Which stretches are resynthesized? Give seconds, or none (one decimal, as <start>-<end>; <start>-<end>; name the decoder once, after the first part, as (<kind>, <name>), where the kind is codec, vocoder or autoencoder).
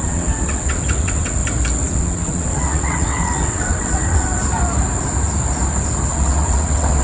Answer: 0.0-1.4 (vocoder, WaveNeXt); 1.9-4.3; 6.1-7.0